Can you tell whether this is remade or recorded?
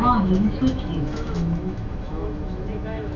remade